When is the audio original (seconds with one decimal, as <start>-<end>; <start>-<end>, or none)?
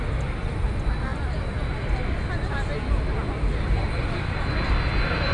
0.0-5.3